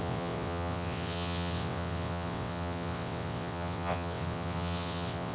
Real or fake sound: fake